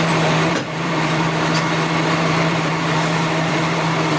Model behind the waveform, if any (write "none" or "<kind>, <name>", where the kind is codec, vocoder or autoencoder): vocoder, BigVGAN v2